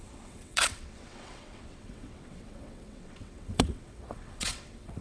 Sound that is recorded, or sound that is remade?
remade